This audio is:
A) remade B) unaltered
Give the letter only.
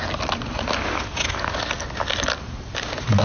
B